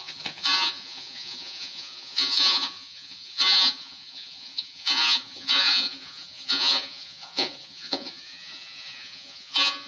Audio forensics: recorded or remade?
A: remade